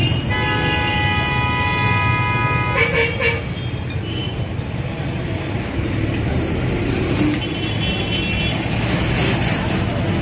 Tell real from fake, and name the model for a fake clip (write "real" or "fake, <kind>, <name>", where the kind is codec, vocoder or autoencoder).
real